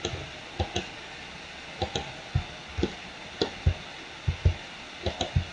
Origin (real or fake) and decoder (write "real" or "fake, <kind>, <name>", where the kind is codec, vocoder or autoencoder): real